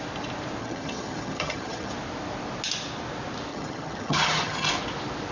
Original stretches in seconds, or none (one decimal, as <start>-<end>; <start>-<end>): 0.0-0.6; 1.9-3.5; 4.7-5.3